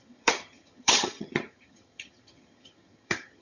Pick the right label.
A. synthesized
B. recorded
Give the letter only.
A